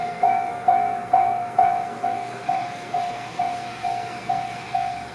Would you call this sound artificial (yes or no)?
yes